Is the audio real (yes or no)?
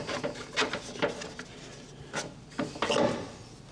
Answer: yes